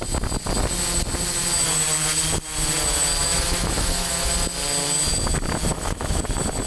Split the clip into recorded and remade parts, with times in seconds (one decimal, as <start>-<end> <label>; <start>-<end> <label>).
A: 0.0-3.2 recorded; 3.2-4.3 remade; 4.3-5.7 recorded; 5.7-6.2 remade; 6.2-6.7 recorded